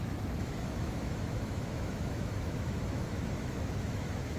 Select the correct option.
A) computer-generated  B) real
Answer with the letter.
A